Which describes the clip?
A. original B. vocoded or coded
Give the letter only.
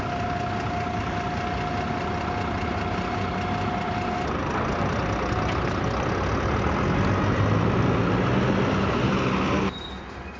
A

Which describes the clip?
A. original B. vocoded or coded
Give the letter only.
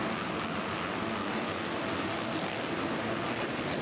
A